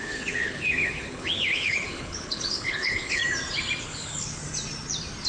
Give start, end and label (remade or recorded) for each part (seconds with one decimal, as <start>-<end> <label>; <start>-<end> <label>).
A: 0.0-3.2 remade; 3.2-3.8 recorded; 3.8-4.4 remade; 4.4-5.3 recorded